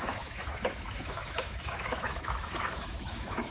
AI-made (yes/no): yes